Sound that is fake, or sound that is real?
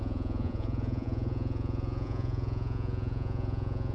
fake